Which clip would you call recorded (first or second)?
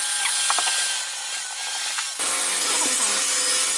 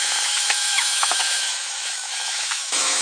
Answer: first